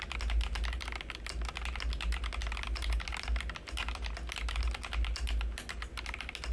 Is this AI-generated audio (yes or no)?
no